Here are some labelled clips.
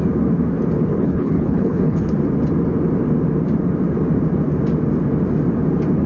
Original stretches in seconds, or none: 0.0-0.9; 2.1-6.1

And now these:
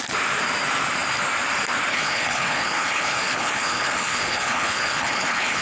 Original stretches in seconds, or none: 0.0-1.9

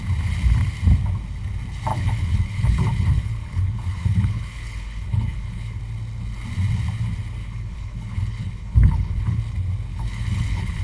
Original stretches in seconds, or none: 0.0-1.9; 5.8-7.4; 9.4-9.9

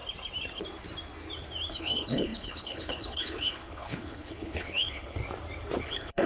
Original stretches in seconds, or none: 0.0-1.7; 5.2-5.8

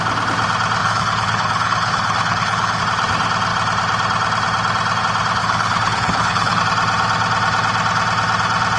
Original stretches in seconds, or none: 0.0-0.8; 2.8-5.4; 6.6-8.8